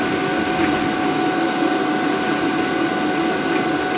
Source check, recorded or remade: recorded